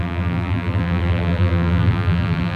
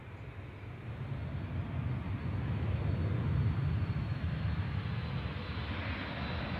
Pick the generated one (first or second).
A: first